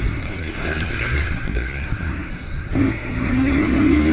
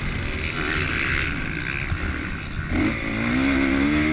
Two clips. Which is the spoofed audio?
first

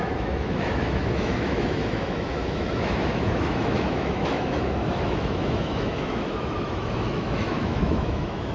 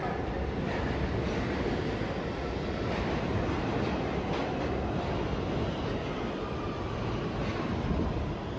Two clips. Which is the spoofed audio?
first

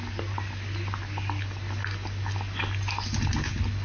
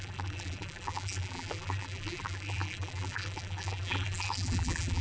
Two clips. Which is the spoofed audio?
second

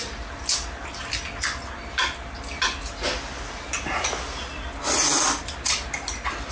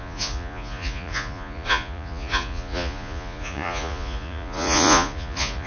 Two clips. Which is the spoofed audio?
second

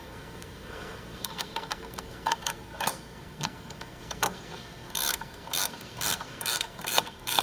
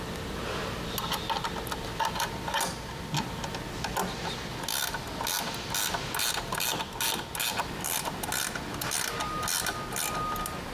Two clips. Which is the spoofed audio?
first